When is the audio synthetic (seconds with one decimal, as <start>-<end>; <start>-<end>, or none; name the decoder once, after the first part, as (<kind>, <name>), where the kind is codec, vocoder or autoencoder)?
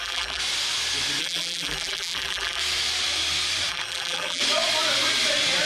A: 0.0-0.4 (vocoder, BigVGAN v2); 1.2-2.6; 3.7-4.4